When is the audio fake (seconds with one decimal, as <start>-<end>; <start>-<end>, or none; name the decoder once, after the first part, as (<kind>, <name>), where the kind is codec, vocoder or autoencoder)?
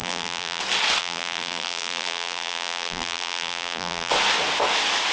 0.0-0.6 (vocoder, BigVGAN v2); 1.0-4.1